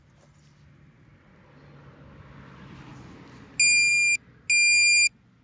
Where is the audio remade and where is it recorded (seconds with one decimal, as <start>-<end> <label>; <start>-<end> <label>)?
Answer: 0.0-5.4 recorded